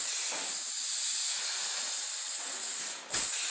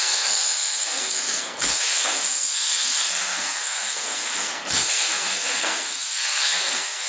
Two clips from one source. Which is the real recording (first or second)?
first